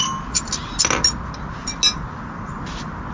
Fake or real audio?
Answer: real